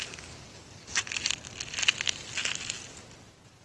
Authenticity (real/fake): real